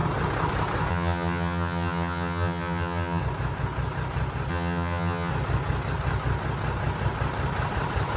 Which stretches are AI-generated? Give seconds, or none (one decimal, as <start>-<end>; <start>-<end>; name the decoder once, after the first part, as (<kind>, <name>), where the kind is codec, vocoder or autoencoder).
0.9-3.2 (vocoder, HiFi-GAN); 4.5-5.3